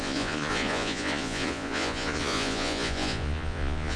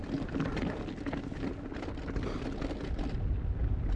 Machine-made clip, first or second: first